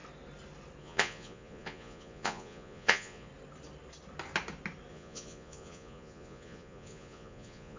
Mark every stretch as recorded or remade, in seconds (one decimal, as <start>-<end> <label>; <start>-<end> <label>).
0.0-0.8 recorded; 0.8-3.3 remade; 3.3-4.9 recorded; 4.9-7.8 remade